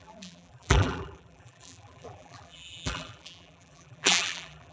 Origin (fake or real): fake